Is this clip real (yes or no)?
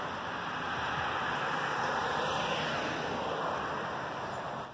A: yes